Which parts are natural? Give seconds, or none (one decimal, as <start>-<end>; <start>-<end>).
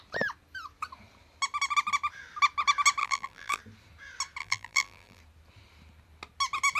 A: 0.0-3.0; 3.6-4.4; 5.2-6.8